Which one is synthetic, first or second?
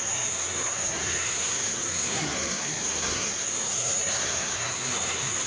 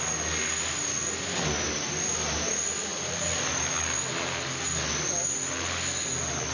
first